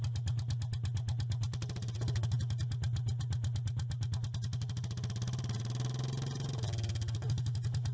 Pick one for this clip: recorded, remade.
recorded